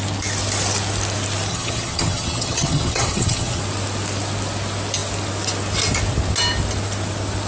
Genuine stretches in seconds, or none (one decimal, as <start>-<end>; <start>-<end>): 0.0-1.5; 3.6-7.5